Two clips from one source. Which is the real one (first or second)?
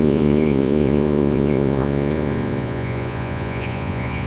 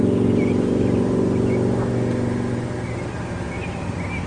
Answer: second